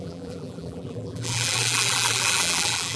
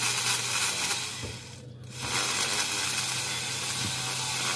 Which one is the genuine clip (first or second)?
second